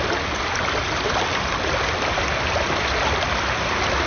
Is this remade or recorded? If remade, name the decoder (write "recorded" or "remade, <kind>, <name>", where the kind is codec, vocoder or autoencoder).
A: recorded